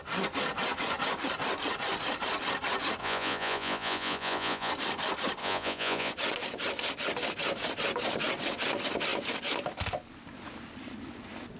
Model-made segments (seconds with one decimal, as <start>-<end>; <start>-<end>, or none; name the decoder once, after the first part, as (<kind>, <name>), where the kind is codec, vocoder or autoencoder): 3.0-4.7 (vocoder, Vocos); 5.4-6.1